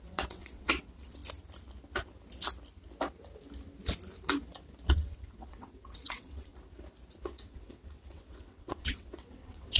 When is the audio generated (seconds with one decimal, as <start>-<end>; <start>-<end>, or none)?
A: 0.0-1.2; 4.9-6.5; 7.2-9.8